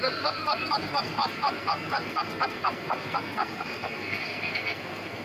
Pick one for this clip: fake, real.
fake